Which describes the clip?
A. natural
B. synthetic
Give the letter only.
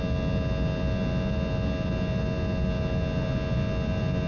A